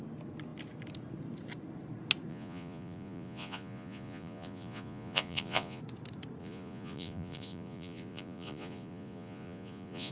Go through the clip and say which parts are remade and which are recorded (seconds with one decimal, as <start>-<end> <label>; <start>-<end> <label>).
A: 0.0-2.3 recorded; 2.3-5.8 remade; 5.8-6.4 recorded; 6.4-10.1 remade